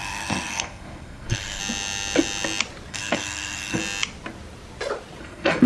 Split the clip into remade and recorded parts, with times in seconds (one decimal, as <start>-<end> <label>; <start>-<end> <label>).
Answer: 0.0-1.6 remade; 1.6-2.9 recorded; 2.9-3.8 remade; 3.8-5.2 recorded; 5.2-5.7 remade